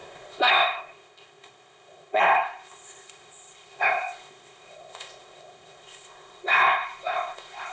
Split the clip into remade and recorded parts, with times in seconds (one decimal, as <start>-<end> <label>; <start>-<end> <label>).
0.0-7.7 remade